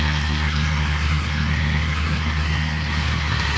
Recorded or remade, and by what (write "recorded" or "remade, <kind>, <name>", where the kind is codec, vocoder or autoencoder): remade, codec, SNAC